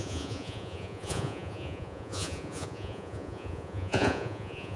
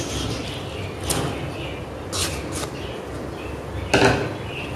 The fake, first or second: first